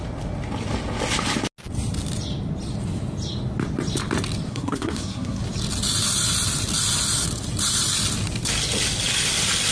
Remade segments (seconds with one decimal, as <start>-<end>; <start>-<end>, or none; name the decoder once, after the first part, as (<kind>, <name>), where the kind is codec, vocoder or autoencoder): 4.5-5.4 (codec, SNAC)